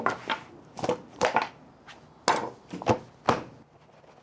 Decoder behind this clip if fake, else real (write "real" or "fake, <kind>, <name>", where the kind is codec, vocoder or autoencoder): real